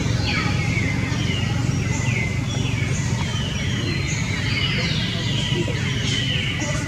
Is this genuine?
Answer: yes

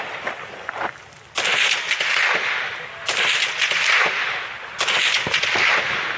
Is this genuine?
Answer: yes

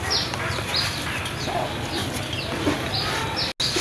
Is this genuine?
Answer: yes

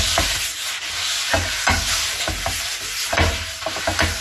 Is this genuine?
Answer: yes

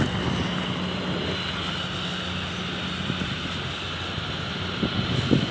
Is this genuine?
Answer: yes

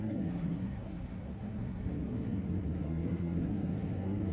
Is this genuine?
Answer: no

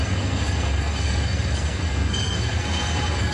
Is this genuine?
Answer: no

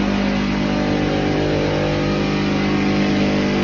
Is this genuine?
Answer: yes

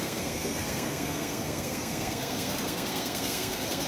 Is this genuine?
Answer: no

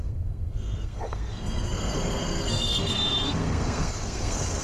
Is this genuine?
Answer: no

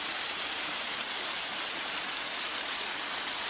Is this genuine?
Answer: yes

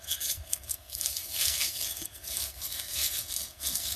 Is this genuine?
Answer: no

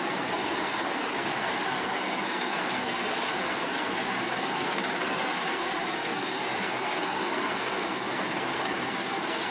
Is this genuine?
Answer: no